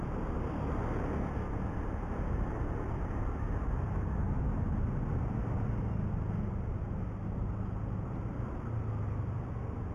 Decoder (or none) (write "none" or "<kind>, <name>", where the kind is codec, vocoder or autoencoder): none